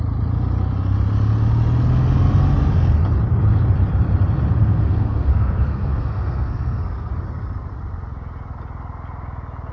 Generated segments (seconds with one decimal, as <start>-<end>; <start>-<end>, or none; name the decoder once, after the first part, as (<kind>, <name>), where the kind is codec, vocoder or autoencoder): 4.5-7.1 (codec, SNAC)